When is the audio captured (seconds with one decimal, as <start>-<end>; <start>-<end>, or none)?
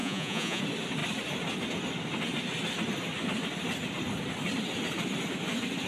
0.6-5.9